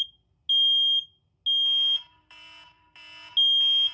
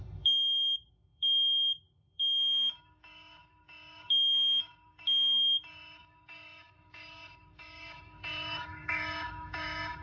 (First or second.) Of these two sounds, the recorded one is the first